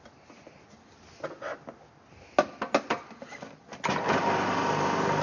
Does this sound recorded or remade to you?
recorded